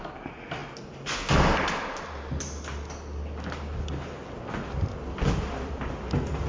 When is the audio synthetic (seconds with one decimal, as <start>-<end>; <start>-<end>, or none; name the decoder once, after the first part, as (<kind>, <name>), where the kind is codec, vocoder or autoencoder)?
none